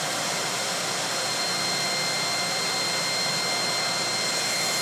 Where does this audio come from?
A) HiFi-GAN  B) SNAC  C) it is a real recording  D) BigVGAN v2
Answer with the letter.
C